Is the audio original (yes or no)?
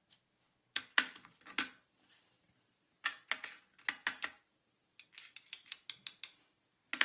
yes